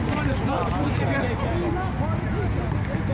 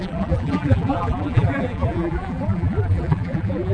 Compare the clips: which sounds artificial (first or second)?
second